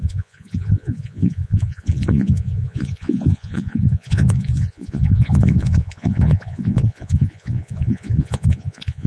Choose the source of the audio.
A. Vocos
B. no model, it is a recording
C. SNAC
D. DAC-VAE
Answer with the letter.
A